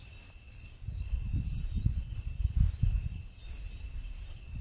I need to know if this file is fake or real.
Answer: real